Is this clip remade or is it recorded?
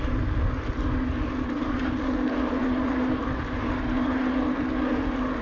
recorded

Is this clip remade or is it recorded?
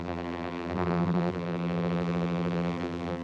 remade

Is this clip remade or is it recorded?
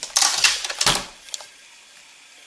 recorded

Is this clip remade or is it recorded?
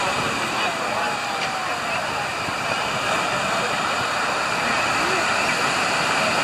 recorded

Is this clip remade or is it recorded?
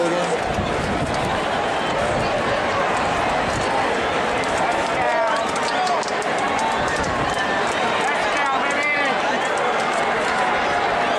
recorded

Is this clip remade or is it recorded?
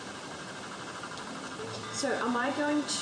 remade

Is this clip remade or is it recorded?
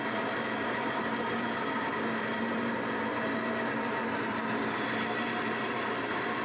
remade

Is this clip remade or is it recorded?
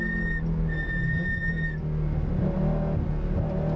recorded